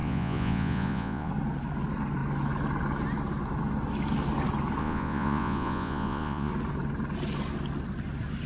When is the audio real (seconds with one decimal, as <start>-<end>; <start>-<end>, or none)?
1.3-4.8; 6.5-8.5